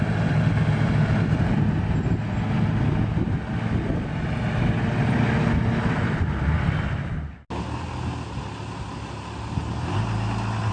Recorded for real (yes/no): yes